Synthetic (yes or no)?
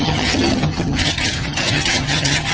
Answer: yes